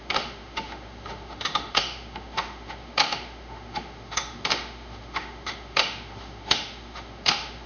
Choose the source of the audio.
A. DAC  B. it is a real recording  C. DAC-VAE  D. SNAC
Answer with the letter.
C